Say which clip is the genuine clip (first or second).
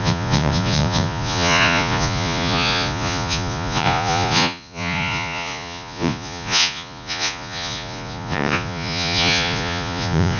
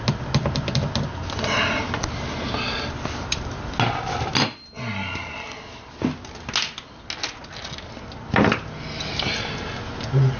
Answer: second